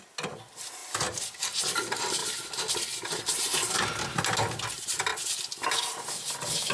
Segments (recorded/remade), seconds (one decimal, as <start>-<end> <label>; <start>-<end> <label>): 0.0-6.7 recorded